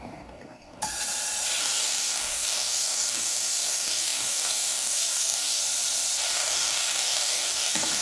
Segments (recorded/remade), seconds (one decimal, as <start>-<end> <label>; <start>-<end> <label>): 0.0-0.8 remade; 0.8-1.6 recorded; 1.6-5.6 remade; 5.6-6.3 recorded; 6.3-8.0 remade

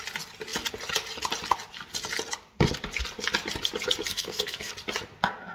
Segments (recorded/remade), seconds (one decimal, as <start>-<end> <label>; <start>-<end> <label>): 0.0-4.1 recorded; 4.1-4.7 remade; 4.7-5.5 recorded

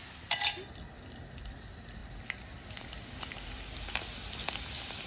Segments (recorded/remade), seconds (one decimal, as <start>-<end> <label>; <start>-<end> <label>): 0.0-5.1 recorded